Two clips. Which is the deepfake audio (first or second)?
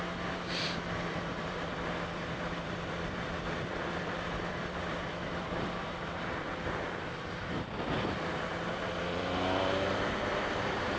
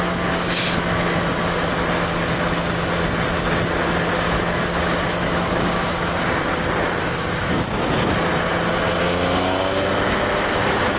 first